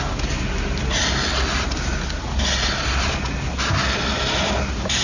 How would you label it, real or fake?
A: real